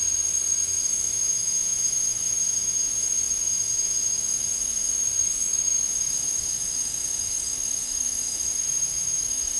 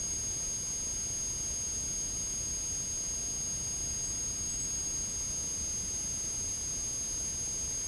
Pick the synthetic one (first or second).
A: first